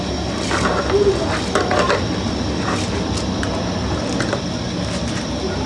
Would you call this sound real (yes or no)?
yes